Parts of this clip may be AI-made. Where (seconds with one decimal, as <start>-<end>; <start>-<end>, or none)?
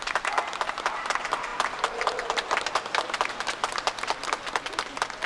none